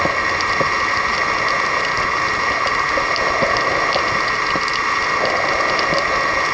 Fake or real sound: real